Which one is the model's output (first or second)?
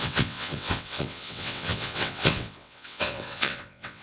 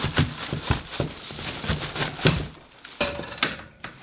first